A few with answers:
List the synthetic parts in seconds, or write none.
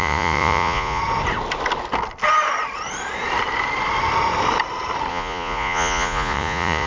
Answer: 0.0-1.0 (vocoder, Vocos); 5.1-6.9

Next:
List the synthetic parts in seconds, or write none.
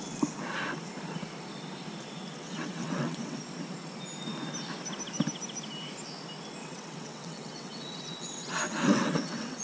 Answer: 2.4-3.4 (vocoder, WaveNeXt); 6.6-9.6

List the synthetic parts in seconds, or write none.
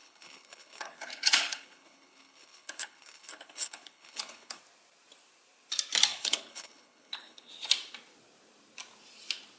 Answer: 0.0-4.6 (codec, HILCodec); 6.1-7.5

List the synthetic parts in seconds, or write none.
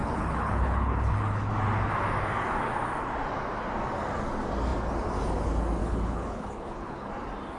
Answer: 0.0-1.5 (codec, HILCodec); 5.8-7.1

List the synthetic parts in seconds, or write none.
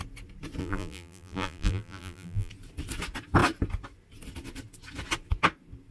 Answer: 0.6-2.5 (vocoder, BigVGAN v2)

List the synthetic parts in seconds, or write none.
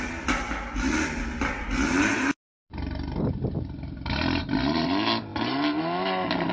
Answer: none